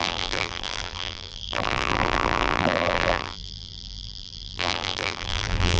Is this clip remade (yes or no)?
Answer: yes